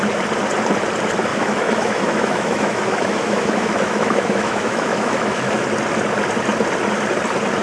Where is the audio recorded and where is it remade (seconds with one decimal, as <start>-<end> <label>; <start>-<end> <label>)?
0.0-1.3 recorded; 1.3-5.5 remade; 5.5-7.6 recorded